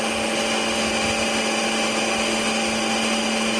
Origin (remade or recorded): recorded